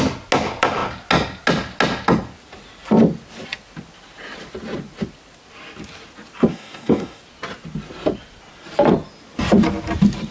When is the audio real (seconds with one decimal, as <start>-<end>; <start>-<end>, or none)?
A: 0.0-6.5; 7.2-10.3